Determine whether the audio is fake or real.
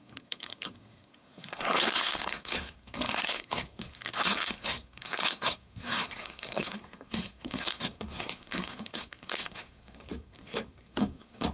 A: fake